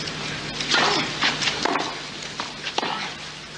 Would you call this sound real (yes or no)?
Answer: yes